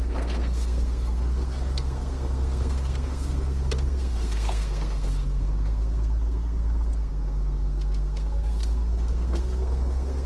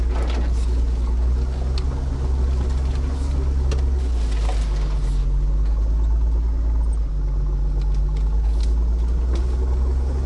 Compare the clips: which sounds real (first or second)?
second